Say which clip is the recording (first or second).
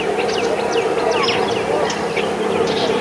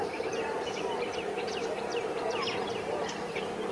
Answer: first